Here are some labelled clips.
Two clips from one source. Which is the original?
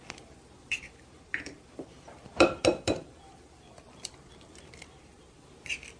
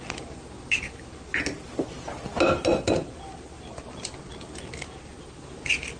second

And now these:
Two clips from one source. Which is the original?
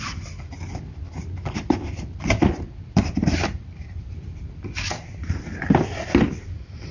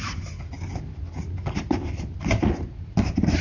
second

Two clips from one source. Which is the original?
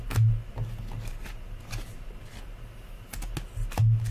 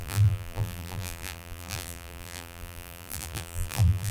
first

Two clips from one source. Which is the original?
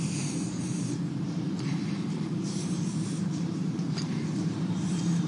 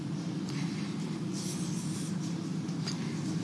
second